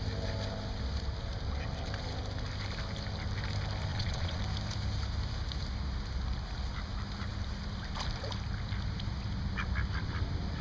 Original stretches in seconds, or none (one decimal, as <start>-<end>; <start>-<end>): 0.0-3.9; 4.4-10.6